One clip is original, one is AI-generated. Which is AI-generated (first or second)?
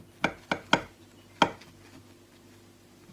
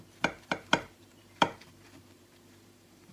second